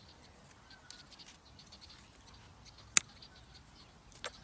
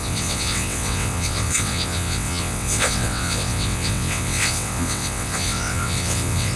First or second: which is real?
first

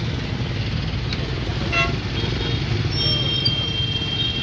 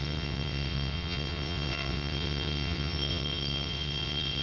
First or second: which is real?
first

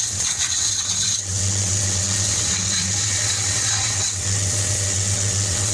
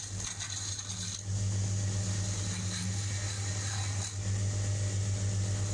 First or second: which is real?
second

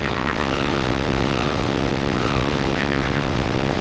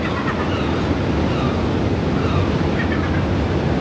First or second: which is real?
second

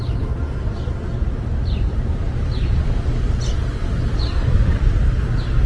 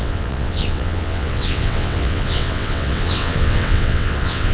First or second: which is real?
first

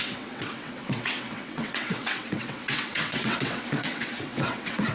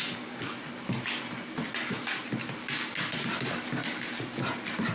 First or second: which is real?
second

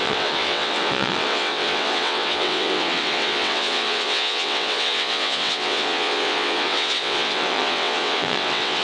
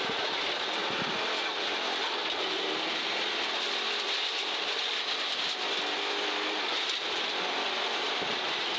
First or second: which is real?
second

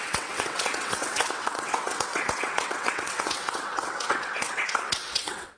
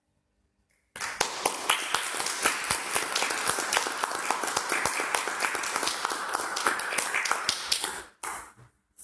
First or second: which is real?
second